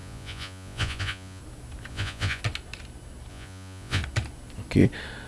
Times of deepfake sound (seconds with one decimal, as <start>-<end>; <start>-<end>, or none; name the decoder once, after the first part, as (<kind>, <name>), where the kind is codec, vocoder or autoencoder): 0.0-1.4 (vocoder, Vocos); 1.9-2.4; 3.3-4.0